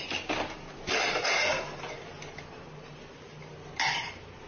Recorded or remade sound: recorded